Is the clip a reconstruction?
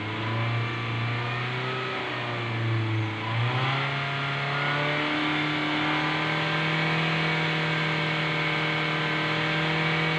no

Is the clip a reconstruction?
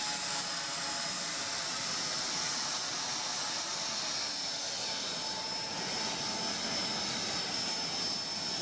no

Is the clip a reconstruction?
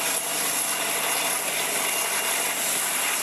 no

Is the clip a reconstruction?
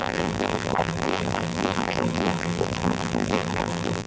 yes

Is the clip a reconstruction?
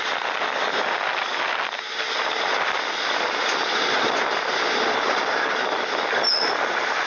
no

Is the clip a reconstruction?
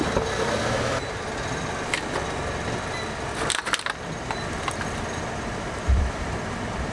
no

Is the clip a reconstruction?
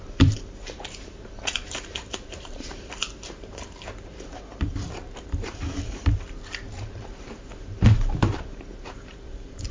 yes